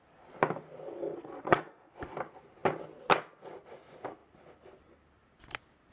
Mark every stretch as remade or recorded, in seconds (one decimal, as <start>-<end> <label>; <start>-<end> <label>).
0.0-1.1 recorded; 1.1-1.9 remade; 1.9-5.9 recorded